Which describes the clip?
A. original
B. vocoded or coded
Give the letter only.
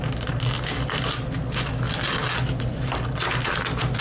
A